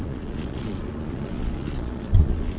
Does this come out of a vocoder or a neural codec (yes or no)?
yes